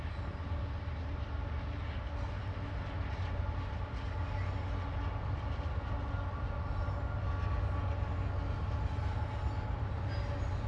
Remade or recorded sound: recorded